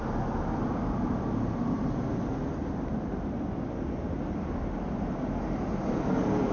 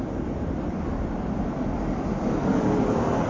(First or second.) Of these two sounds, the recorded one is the first